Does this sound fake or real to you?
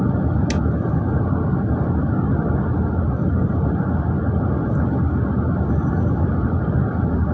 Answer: real